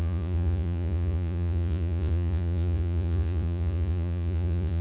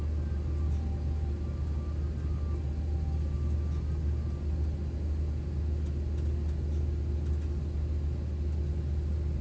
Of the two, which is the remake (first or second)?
first